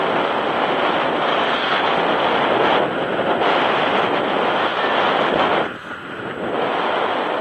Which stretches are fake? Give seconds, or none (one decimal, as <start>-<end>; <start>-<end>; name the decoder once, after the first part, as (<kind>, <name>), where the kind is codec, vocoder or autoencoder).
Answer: 1.3-2.0 (codec, DAC)